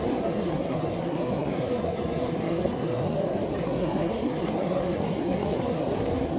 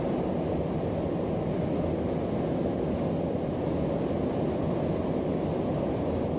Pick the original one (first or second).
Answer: second